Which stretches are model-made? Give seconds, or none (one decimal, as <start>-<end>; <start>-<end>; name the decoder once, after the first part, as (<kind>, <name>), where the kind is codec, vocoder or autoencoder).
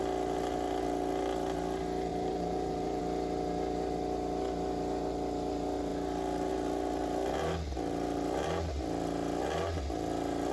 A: 2.1-3.0 (vocoder, BigVGAN v2)